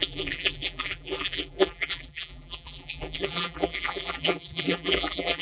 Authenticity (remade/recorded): remade